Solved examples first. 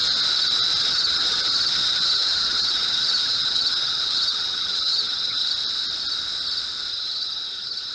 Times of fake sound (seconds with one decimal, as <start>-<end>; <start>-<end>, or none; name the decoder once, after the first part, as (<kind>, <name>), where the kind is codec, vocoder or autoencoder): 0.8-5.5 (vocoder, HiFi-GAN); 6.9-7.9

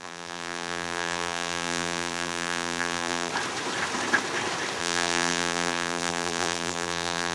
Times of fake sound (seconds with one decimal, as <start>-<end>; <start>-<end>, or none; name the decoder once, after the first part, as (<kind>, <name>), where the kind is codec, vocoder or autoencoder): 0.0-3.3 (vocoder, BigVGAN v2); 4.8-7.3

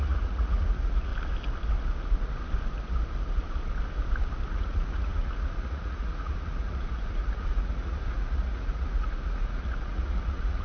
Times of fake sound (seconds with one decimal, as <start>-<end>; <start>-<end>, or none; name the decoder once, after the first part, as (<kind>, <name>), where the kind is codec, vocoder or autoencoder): 0.0-1.1 (vocoder, Vocos); 4.5-10.6